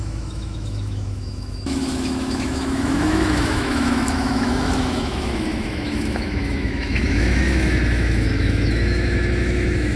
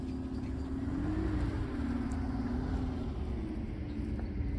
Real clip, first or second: second